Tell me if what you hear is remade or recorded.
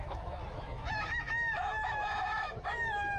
remade